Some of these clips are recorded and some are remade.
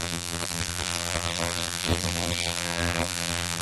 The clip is remade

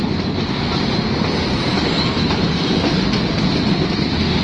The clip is recorded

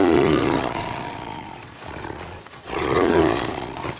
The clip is remade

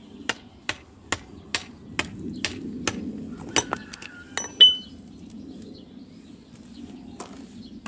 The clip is recorded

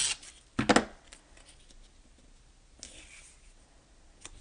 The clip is recorded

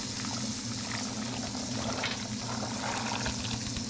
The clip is recorded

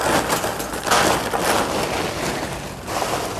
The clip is recorded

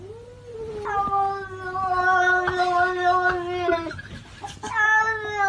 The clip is recorded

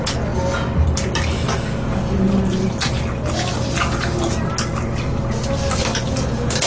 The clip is recorded